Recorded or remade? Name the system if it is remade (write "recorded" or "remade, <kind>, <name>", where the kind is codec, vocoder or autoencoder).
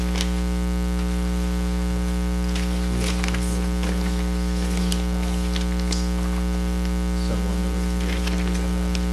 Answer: recorded